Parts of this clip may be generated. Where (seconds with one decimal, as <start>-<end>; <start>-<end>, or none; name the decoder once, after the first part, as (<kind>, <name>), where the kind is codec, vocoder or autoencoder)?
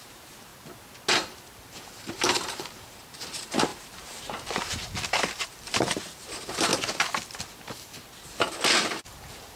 0.0-0.5 (vocoder, BigVGAN v2); 1.8-6.7; 9.1-9.6